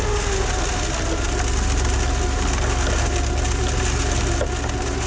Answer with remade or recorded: recorded